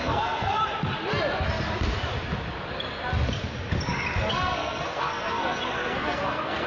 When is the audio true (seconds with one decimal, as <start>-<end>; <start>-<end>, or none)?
0.6-4.3